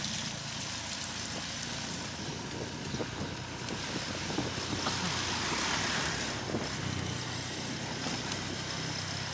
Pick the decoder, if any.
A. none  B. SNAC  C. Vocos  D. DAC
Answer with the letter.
A